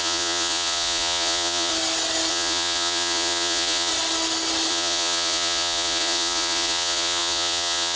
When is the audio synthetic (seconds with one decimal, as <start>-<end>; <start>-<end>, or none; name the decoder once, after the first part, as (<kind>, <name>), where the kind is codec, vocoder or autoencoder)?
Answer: 0.0-1.7 (vocoder, Vocos); 2.3-3.9; 4.7-8.0